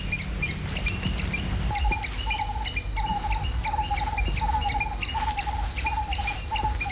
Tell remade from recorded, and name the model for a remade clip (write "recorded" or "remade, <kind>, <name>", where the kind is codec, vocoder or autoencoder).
recorded